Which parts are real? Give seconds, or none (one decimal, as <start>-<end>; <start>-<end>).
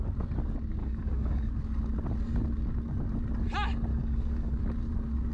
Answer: 0.0-0.8; 1.5-3.9; 4.6-5.3